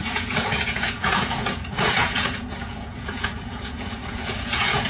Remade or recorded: remade